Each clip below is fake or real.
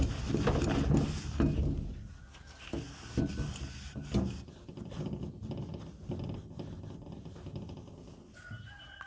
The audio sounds real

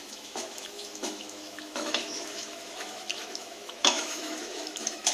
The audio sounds fake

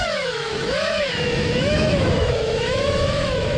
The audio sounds fake